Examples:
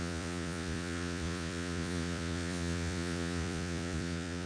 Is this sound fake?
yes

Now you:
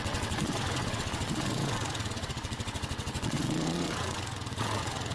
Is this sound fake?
yes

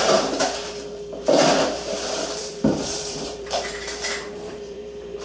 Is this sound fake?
yes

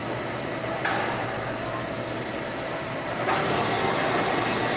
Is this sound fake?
no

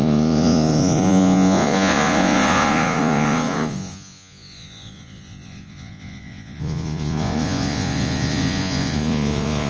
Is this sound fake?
yes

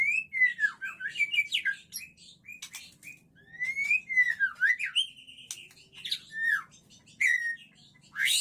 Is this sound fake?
no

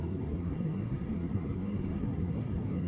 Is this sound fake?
yes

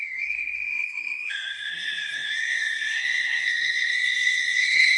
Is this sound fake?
yes